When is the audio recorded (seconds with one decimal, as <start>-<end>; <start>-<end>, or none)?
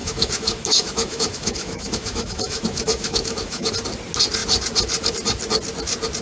3.7-6.2